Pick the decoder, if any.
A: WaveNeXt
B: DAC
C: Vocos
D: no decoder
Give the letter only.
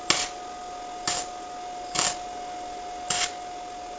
D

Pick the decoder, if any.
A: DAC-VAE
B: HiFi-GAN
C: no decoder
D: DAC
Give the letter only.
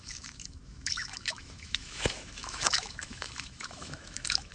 A